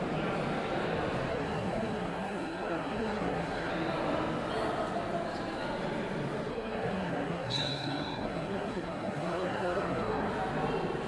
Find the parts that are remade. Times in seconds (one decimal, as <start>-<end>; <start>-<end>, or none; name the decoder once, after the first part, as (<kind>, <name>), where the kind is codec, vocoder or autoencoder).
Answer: 1.3-3.7 (codec, SNAC); 6.5-10.3